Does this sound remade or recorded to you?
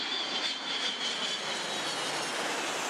recorded